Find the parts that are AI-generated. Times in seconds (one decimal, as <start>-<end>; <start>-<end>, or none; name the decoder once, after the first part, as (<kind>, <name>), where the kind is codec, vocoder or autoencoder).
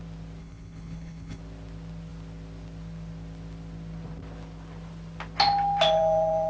0.4-1.4 (codec, HILCodec)